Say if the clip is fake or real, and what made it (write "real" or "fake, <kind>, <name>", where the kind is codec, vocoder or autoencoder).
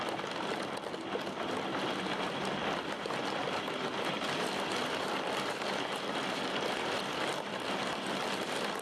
fake, vocoder, BigVGAN v2